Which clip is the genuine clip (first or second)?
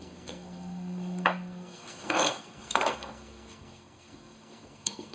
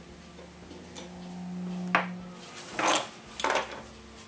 second